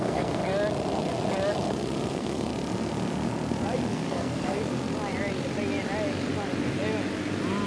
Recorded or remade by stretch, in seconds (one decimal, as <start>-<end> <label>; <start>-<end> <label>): 0.0-0.4 remade; 0.4-2.1 recorded; 2.1-2.5 remade; 2.5-3.9 recorded; 3.9-4.6 remade; 4.6-7.7 recorded

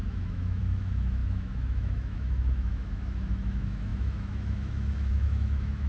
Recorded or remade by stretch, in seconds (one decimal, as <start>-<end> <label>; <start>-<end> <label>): 0.0-5.9 remade

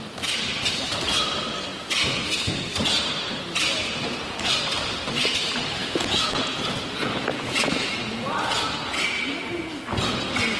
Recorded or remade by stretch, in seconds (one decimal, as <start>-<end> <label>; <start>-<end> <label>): 0.0-5.8 recorded; 5.8-8.6 remade; 8.6-10.6 recorded

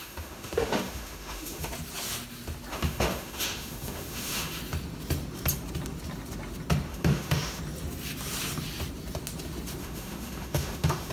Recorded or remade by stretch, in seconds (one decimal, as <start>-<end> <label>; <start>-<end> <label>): 0.0-1.7 remade; 1.7-2.7 recorded; 2.7-4.6 remade; 4.6-6.9 recorded; 6.9-7.6 remade; 7.6-9.8 recorded; 9.8-11.1 remade

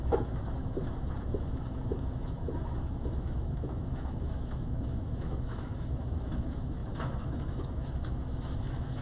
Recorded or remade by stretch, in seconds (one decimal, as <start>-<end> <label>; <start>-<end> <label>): 0.0-9.0 remade

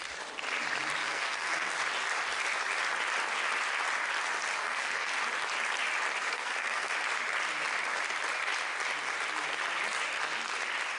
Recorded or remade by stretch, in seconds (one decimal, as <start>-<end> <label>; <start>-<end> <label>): 0.0-1.0 recorded; 1.0-1.7 remade; 1.7-4.6 recorded; 4.6-5.2 remade; 5.2-6.2 recorded; 6.2-6.9 remade; 6.9-11.0 recorded

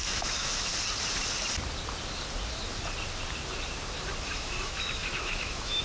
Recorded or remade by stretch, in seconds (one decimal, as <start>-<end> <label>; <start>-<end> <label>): 0.0-0.7 remade; 0.7-4.2 recorded; 4.2-5.8 remade

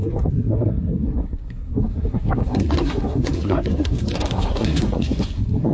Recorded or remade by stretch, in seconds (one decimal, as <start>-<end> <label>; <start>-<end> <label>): 0.0-5.7 remade